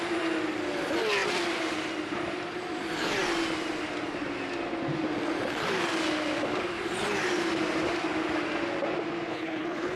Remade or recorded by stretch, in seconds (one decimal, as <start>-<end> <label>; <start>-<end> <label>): 0.0-9.3 recorded; 9.3-10.0 remade